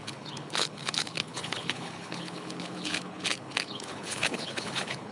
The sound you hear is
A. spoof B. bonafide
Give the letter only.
A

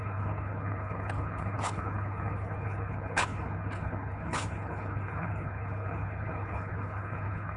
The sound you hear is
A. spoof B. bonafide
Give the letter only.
A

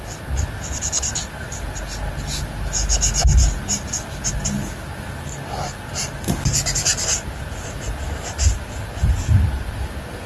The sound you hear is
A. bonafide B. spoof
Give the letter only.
A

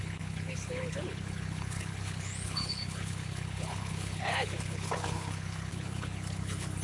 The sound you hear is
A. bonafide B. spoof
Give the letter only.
B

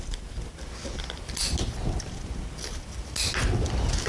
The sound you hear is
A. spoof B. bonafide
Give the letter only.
B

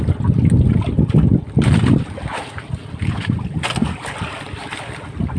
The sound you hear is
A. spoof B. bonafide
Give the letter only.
B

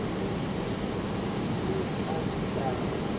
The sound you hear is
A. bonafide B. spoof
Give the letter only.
A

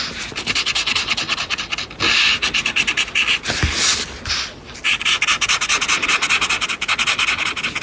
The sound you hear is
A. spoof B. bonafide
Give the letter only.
B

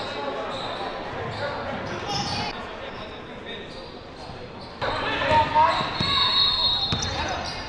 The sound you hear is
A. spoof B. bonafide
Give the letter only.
B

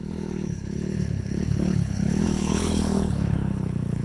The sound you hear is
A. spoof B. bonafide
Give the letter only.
A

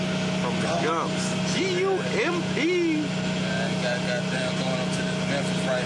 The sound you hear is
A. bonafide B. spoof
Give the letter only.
A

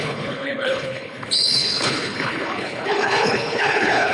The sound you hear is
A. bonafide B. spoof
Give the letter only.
B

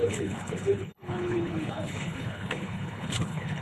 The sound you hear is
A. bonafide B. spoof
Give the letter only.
B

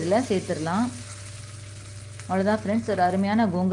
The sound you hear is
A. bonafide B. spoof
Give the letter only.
A